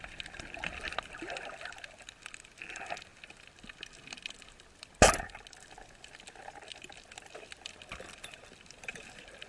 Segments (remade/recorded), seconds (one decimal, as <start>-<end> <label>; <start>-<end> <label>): 0.0-9.5 recorded